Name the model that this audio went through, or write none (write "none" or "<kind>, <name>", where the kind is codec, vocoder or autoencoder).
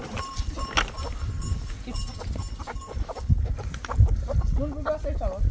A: none